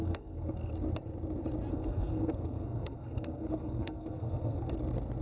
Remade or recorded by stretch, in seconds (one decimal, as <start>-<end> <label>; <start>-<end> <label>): 0.0-0.7 remade; 0.7-1.7 recorded; 1.7-4.7 remade; 4.7-5.2 recorded